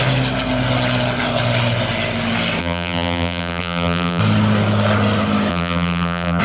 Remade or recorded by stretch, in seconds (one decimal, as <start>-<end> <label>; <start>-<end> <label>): 0.0-2.6 recorded; 2.6-4.2 remade; 4.2-5.5 recorded; 5.5-6.4 remade